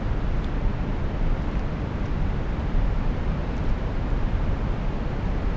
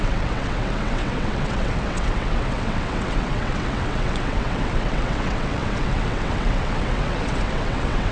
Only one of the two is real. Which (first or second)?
first